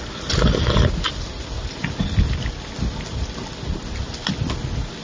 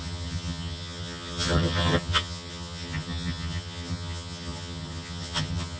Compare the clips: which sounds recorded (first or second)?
first